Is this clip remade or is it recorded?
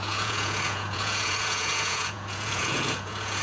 remade